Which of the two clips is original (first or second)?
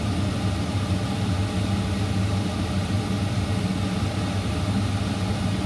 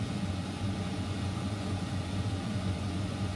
first